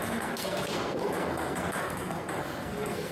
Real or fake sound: fake